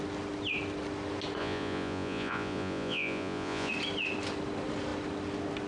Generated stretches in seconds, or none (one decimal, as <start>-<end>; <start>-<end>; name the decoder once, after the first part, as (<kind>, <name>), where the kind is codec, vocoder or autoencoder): 1.4-3.7 (vocoder, Vocos)